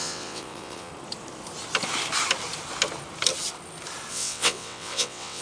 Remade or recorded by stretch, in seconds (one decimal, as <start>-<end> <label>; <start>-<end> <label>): 0.0-0.9 remade; 0.9-4.1 recorded; 4.1-5.4 remade